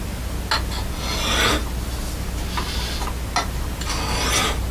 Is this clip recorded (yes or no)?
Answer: yes